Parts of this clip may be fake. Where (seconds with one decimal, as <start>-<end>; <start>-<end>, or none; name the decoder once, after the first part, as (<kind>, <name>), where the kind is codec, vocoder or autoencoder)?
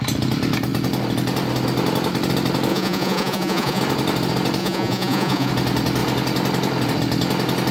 2.7-3.8 (vocoder, Vocos); 4.6-5.5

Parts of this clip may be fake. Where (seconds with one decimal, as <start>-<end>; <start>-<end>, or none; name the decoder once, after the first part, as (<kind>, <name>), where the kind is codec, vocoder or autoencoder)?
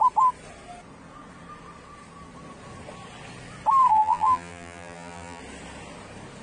3.9-5.4 (vocoder, BigVGAN v2)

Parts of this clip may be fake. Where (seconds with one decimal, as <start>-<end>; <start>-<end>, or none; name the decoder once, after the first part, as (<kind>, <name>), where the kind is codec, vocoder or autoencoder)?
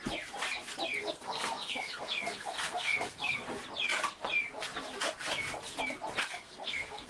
1.0-3.4 (codec, SNAC); 6.2-7.1